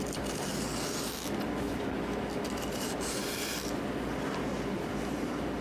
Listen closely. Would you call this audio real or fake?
real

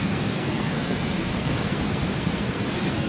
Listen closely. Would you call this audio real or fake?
fake